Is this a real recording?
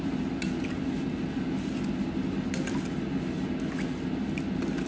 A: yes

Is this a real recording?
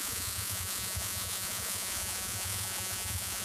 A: no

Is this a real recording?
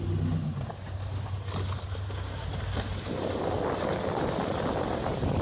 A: yes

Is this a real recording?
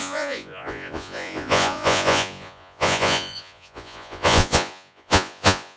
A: no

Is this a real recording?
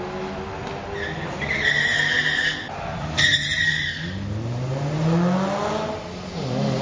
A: yes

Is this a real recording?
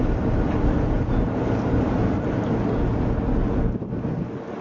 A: yes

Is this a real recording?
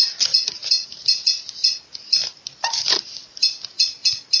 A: yes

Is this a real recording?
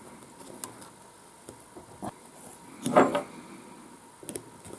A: yes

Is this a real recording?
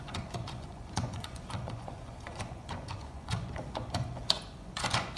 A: no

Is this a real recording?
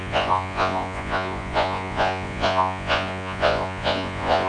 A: no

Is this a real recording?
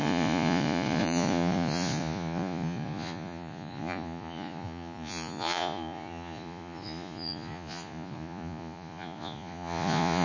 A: no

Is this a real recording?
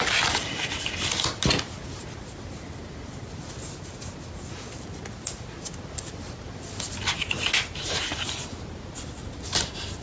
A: yes